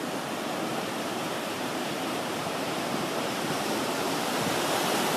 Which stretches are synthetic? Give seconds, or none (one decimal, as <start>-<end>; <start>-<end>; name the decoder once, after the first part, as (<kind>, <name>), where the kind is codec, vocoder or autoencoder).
0.7-3.8 (vocoder, BigVGAN v2)